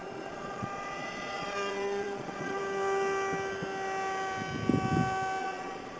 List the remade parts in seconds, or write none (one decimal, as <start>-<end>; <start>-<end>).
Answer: 0.0-2.6; 5.4-6.0